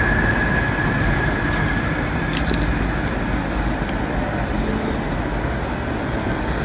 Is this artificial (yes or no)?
no